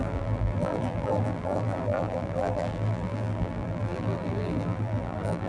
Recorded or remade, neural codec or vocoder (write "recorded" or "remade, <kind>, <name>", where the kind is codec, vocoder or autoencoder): remade, vocoder, BigVGAN v2